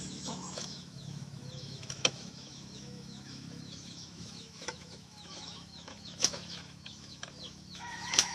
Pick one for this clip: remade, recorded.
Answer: remade